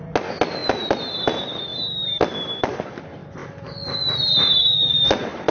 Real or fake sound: real